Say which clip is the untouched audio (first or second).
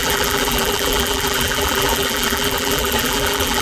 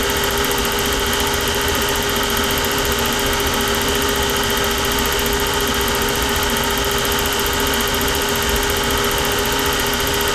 second